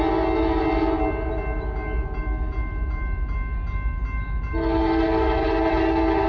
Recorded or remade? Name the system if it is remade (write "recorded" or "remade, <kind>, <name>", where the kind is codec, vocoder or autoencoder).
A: recorded